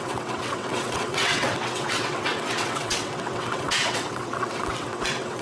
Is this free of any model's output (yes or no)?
no